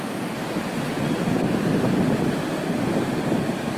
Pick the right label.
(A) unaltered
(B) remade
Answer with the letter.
A